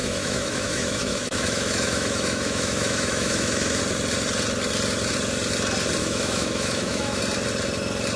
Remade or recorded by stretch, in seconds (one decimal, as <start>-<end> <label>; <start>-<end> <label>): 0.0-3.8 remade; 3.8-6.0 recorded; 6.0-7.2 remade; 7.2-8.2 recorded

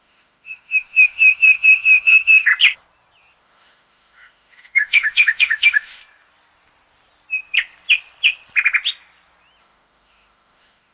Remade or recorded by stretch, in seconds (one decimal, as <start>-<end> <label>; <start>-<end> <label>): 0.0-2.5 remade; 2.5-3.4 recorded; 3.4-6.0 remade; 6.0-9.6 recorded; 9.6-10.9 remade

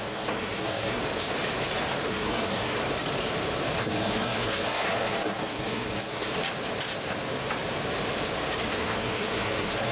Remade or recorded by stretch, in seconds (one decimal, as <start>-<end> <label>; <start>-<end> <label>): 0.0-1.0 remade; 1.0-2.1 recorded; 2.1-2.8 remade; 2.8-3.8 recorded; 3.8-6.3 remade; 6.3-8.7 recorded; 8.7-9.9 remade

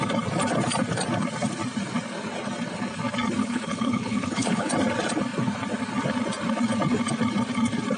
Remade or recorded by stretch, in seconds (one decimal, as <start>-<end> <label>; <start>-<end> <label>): 0.0-3.4 recorded; 3.4-4.7 remade; 4.7-8.0 recorded

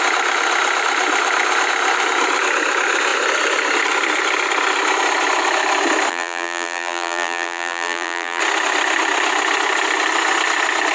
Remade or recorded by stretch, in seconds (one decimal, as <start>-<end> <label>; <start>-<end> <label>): 0.0-6.1 recorded; 6.1-8.4 remade; 8.4-10.9 recorded